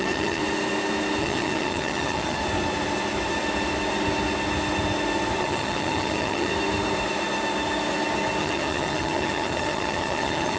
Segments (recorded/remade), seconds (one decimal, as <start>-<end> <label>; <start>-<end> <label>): 0.0-0.4 remade; 0.4-1.2 recorded; 1.2-2.4 remade; 2.4-5.4 recorded; 5.4-6.5 remade; 6.5-8.4 recorded; 8.4-10.6 remade